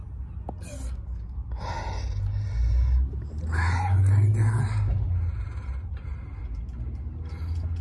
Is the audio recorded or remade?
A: recorded